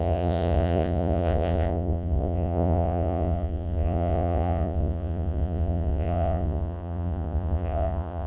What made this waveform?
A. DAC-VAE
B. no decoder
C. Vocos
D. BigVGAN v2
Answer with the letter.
C